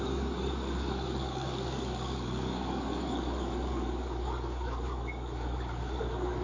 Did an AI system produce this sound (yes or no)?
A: yes